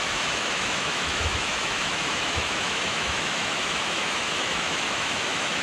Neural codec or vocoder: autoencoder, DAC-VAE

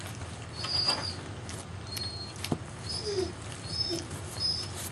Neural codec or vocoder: none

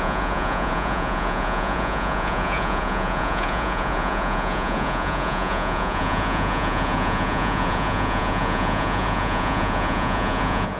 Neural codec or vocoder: vocoder, Vocos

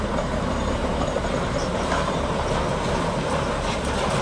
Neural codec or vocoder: vocoder, BigVGAN v2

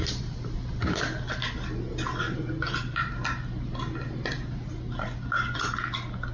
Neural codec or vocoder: none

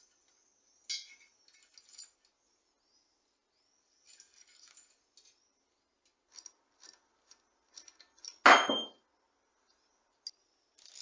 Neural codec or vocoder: none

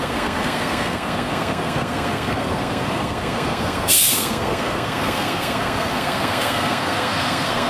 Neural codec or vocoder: codec, SNAC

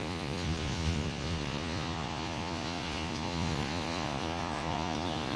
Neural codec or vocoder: vocoder, Vocos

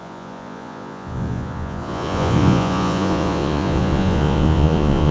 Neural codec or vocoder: vocoder, Vocos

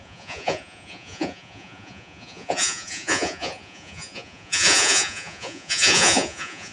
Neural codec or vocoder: vocoder, Vocos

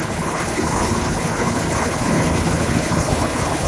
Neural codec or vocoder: codec, HILCodec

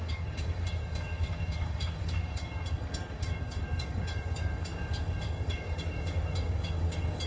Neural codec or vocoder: codec, DAC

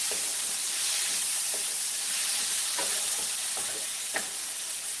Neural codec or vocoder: vocoder, BigVGAN v2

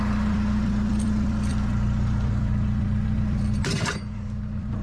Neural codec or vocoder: vocoder, BigVGAN v2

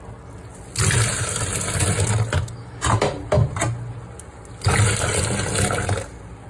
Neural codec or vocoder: none